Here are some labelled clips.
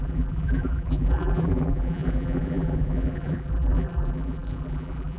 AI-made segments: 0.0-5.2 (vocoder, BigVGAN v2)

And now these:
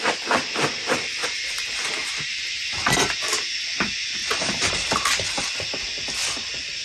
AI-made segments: 1.2-2.9 (vocoder, BigVGAN v2); 4.2-5.5

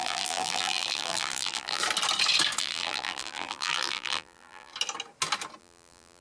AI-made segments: 0.0-1.8 (vocoder, BigVGAN v2); 2.6-4.7; 5.6-6.2

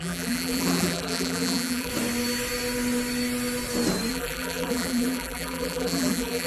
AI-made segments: 0.0-1.9 (vocoder, BigVGAN v2); 4.1-6.5

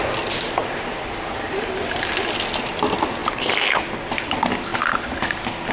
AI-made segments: 4.7-5.2 (vocoder, BigVGAN v2)

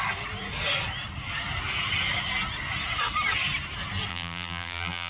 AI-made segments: 4.1-5.1 (vocoder, BigVGAN v2)

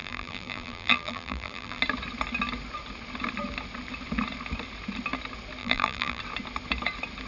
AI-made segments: 0.0-1.8 (vocoder, BigVGAN v2); 5.6-6.2